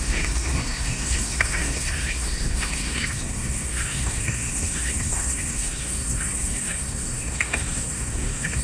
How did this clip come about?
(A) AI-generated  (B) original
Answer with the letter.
A